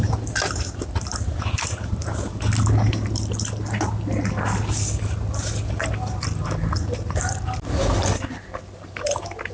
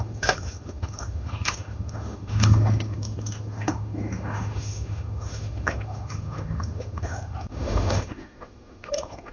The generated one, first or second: second